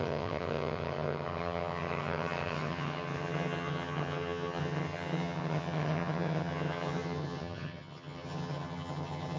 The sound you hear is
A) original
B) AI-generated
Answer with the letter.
B